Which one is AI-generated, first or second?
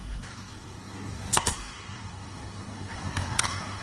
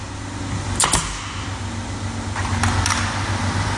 first